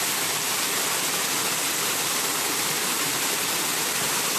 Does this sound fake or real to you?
real